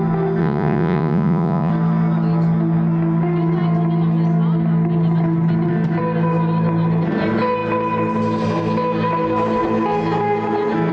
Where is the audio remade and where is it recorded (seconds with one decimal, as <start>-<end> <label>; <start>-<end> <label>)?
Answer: 0.0-0.4 recorded; 0.4-1.7 remade; 1.7-10.9 recorded